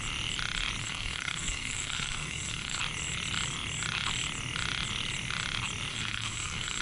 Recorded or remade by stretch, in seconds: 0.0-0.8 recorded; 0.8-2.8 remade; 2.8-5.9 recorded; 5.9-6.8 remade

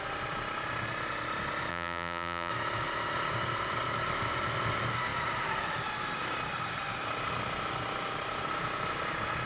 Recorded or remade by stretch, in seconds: 0.0-1.7 recorded; 1.7-2.5 remade; 2.5-9.5 recorded

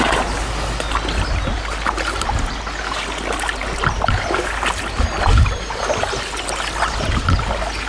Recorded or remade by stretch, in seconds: 0.0-7.9 recorded

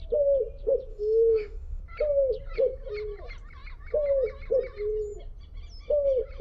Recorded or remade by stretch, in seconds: 0.0-0.9 recorded; 0.9-1.8 remade; 1.8-6.4 recorded

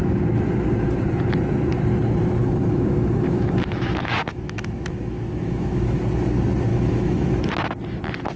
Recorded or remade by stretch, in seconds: 0.0-2.4 recorded; 2.4-6.0 remade; 6.0-6.7 recorded; 6.7-7.5 remade; 7.5-8.4 recorded

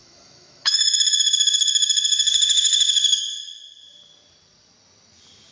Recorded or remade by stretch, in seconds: 0.0-3.3 remade; 3.3-5.5 recorded

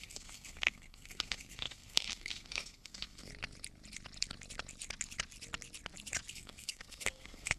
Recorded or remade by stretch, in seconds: 0.0-3.3 remade; 3.3-6.3 recorded; 6.3-7.6 remade

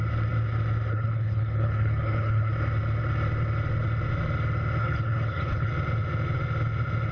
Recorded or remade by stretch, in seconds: 0.0-0.9 recorded; 0.9-2.5 remade; 2.5-4.8 recorded; 4.8-5.7 remade; 5.7-7.1 recorded